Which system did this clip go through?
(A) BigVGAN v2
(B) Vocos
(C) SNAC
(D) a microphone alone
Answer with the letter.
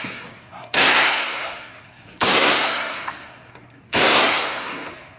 C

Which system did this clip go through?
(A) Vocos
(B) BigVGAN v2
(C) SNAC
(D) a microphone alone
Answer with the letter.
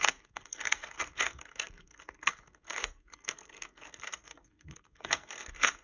C